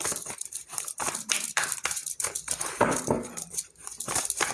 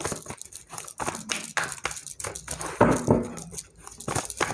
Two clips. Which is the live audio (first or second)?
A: second